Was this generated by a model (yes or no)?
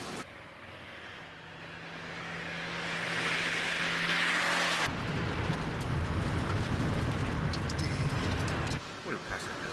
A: no